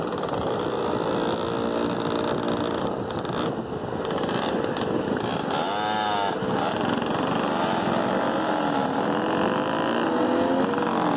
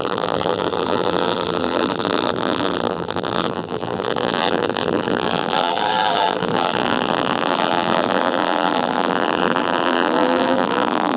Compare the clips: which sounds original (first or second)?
first